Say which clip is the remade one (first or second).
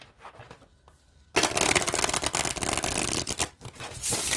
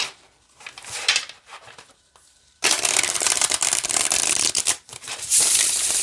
second